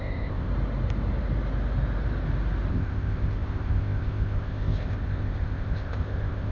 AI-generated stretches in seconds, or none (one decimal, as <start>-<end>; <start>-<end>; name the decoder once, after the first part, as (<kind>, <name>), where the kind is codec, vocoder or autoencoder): 0.0-0.5 (codec, ZipCodec); 2.7-6.5